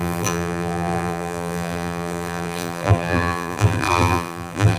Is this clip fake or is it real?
fake